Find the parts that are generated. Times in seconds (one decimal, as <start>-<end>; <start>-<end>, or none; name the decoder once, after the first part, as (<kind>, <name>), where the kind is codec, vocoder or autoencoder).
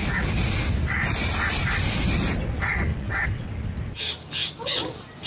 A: 2.9-3.5 (vocoder, WaveNeXt)